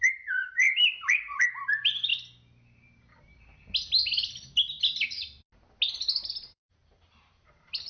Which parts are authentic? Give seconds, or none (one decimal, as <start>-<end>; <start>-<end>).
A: 2.1-6.3